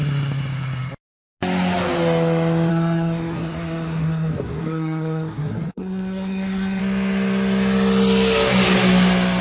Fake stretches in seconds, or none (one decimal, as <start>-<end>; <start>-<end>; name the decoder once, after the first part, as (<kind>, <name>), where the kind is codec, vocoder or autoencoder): 2.7-6.8 (codec, SNAC)